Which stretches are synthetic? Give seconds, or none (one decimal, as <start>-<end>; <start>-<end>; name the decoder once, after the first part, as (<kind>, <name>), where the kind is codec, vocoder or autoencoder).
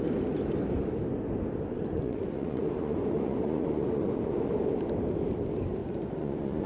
1.7-4.5 (vocoder, Vocos); 5.8-6.7